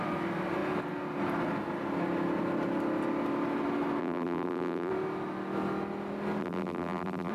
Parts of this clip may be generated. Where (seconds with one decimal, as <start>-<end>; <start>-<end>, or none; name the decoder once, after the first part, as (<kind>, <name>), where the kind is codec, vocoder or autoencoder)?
4.0-4.9 (vocoder, BigVGAN v2); 6.4-7.3

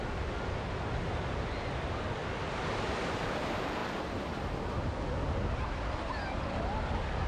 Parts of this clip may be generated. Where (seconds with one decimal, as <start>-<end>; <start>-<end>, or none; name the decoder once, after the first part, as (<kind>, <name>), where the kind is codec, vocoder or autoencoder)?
2.2-3.2 (vocoder, BigVGAN v2)

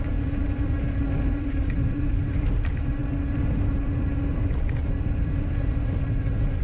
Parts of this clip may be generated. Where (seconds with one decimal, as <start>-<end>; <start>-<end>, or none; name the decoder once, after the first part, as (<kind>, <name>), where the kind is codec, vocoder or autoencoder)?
0.0-3.0 (vocoder, BigVGAN v2); 4.6-6.6

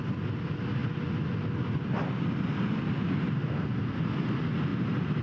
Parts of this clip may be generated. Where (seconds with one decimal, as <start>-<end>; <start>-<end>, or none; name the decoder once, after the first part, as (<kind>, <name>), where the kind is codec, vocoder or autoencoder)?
none

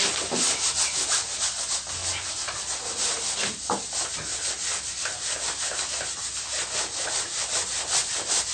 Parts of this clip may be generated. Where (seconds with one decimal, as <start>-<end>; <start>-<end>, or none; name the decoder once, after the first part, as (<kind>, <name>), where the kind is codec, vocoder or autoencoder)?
4.3-6.8 (vocoder, BigVGAN v2)